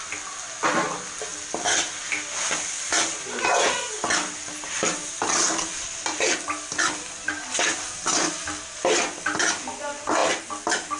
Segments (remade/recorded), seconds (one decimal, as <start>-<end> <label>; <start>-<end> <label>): 0.0-11.0 recorded